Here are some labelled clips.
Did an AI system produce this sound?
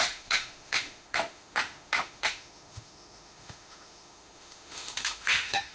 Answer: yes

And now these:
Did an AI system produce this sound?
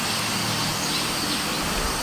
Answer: no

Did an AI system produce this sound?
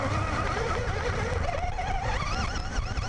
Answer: no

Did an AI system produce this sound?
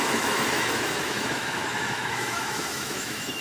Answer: yes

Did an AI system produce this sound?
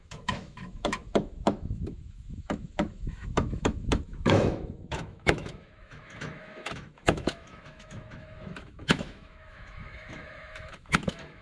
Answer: yes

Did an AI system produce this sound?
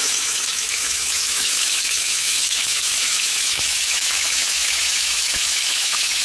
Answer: yes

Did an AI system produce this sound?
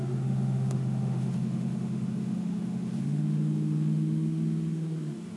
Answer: yes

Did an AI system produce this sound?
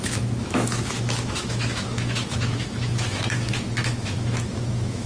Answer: yes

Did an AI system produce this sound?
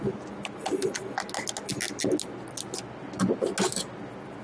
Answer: no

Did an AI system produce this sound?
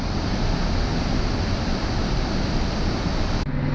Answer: no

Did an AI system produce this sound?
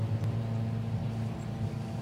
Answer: no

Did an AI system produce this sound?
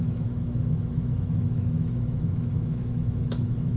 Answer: yes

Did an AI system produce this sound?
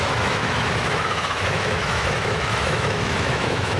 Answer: yes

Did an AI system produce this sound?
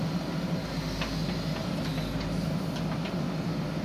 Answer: no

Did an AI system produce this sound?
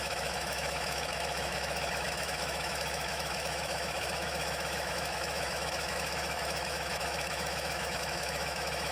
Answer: yes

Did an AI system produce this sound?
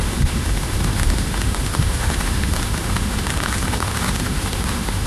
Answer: yes